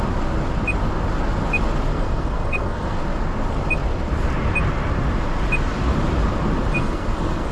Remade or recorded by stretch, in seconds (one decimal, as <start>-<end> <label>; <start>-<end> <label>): 0.0-1.9 recorded; 1.9-3.0 remade; 3.0-6.7 recorded; 6.7-7.5 remade